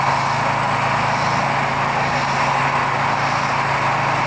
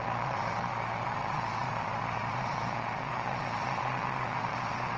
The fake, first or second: second